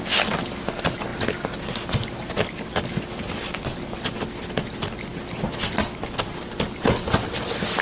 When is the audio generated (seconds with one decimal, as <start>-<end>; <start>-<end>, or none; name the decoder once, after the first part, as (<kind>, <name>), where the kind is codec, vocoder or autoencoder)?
none